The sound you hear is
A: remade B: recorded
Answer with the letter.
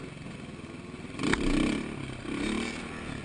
B